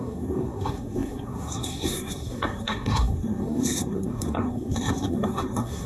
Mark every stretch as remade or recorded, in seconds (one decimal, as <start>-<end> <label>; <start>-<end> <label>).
0.0-5.9 remade

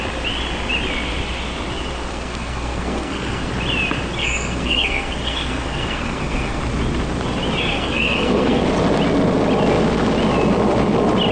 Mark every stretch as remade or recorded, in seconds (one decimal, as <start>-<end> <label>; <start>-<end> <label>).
0.0-2.1 recorded; 2.1-3.5 remade; 3.5-4.2 recorded; 4.2-6.6 remade; 6.6-7.7 recorded; 7.7-8.6 remade; 8.6-11.3 recorded

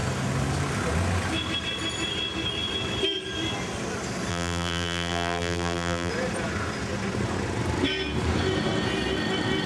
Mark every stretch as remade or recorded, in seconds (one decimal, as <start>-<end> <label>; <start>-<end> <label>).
0.0-4.3 recorded; 4.3-6.1 remade; 6.1-9.7 recorded

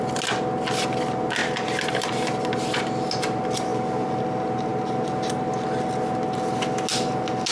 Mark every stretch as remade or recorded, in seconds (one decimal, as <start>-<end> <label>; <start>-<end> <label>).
0.0-7.5 recorded

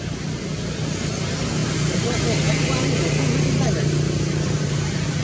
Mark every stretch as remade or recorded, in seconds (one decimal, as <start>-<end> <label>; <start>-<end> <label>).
0.0-5.2 recorded

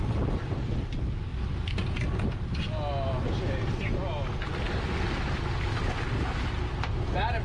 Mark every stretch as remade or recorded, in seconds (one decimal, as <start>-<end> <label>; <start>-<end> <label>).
0.0-7.4 recorded